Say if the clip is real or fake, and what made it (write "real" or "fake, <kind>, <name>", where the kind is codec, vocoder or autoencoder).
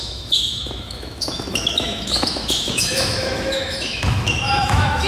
fake, autoencoder, DAC-VAE